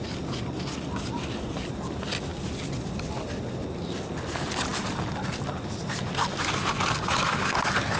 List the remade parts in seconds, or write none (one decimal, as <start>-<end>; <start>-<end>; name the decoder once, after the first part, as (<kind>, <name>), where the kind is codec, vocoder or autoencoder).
none